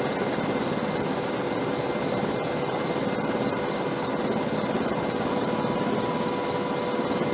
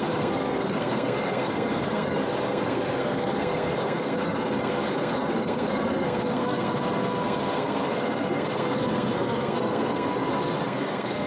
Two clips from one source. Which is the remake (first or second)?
second